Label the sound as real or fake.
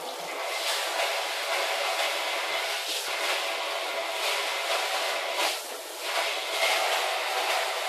real